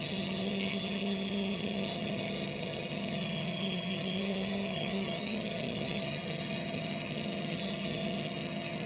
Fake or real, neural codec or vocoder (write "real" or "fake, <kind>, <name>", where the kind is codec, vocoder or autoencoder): fake, vocoder, HiFi-GAN